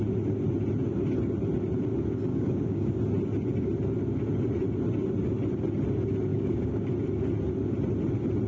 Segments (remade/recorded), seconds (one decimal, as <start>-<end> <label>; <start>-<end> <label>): 0.0-2.3 recorded; 2.3-2.9 remade; 2.9-6.3 recorded; 6.3-6.9 remade; 6.9-8.5 recorded